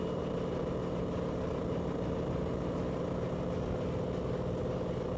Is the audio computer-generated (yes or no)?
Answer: no